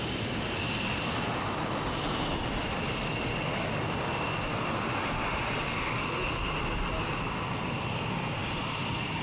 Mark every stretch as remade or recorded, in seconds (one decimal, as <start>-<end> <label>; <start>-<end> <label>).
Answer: 0.0-9.2 recorded

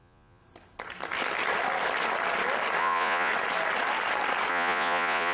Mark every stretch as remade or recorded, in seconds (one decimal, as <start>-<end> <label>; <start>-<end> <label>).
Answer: 0.0-0.4 remade; 0.4-2.8 recorded; 2.8-3.3 remade; 3.3-4.5 recorded; 4.5-5.3 remade

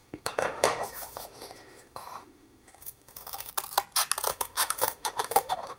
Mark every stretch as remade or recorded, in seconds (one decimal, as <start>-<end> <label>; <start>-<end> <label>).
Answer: 0.0-3.5 remade; 3.5-4.3 recorded; 4.3-5.8 remade

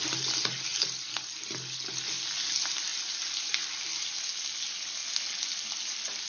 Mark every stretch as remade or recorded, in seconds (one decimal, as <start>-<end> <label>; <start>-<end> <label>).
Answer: 0.0-6.3 recorded

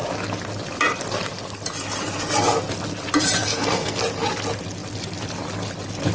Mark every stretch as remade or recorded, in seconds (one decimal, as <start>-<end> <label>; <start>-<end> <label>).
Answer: 0.0-3.4 recorded; 3.4-4.0 remade; 4.0-6.1 recorded

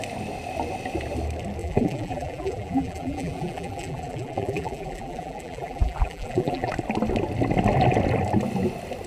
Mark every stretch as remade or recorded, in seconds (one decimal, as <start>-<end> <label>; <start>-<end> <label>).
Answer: 0.0-1.6 recorded; 1.6-6.7 remade; 6.7-9.1 recorded

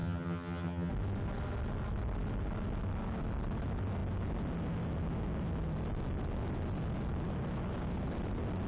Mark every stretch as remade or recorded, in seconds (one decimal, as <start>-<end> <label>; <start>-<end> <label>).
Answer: 0.0-0.9 remade; 0.9-8.7 recorded

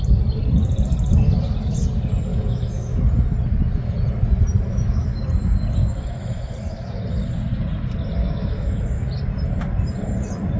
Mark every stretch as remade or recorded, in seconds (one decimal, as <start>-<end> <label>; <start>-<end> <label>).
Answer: 0.0-2.3 recorded; 2.3-3.0 remade; 3.0-4.7 recorded; 4.7-5.2 remade; 5.2-5.8 recorded; 5.8-6.5 remade; 6.5-8.2 recorded; 8.2-9.1 remade; 9.1-10.6 recorded